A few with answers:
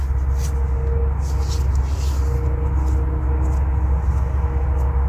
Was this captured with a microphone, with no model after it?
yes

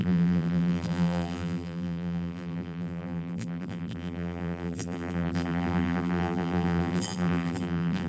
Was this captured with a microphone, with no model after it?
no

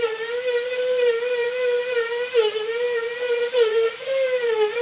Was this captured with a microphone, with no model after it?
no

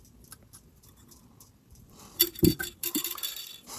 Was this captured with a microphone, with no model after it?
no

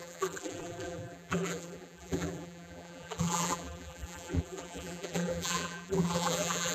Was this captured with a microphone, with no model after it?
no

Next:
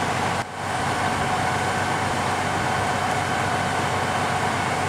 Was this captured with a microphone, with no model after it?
yes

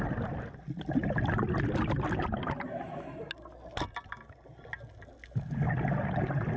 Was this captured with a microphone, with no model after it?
yes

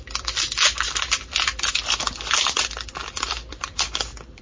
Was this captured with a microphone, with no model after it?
no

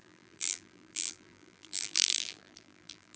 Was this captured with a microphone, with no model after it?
no